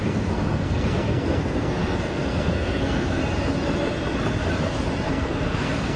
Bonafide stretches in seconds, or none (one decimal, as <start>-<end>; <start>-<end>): 3.2-5.1